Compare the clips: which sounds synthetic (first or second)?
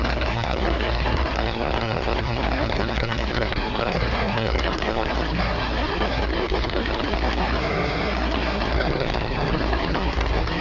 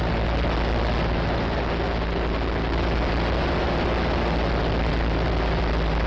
first